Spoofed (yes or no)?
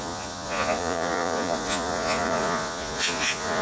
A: yes